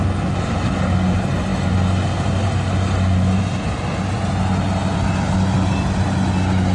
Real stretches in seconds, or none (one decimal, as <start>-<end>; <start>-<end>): 0.0-6.7